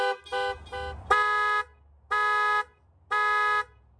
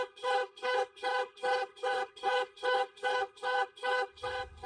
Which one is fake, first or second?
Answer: second